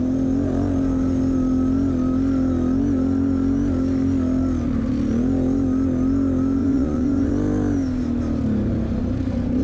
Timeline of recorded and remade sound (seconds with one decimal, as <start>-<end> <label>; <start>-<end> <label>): 0.0-6.6 recorded; 6.6-7.3 remade; 7.3-9.6 recorded